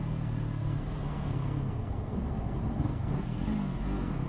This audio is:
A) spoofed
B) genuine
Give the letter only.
A